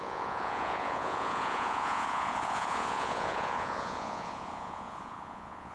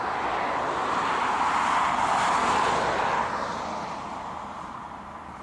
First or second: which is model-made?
first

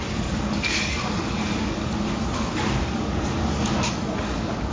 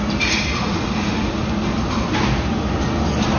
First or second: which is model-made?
first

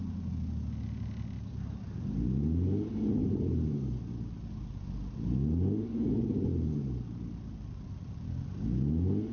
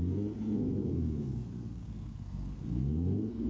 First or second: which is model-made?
second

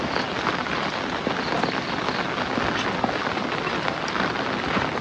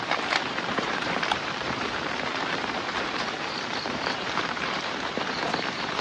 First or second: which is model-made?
second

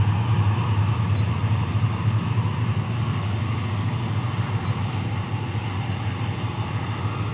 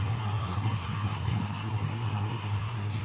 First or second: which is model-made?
second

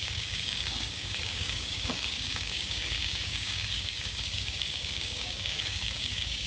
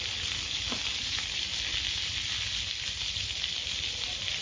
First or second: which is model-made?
first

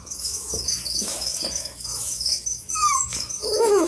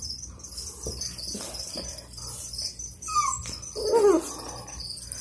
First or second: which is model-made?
first